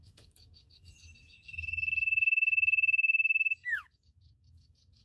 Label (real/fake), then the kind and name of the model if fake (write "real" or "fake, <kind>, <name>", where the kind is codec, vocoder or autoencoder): fake, codec, DAC